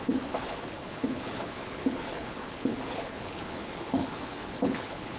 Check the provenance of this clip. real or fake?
fake